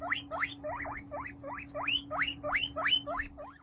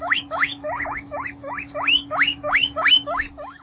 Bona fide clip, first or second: first